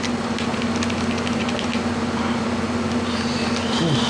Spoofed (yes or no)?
no